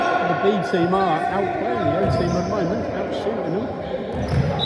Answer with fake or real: real